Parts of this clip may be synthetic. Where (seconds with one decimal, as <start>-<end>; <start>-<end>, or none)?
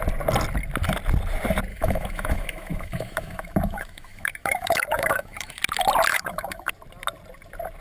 1.7-5.6; 6.1-6.7